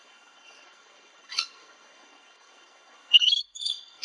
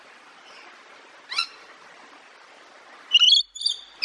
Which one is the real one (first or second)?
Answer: second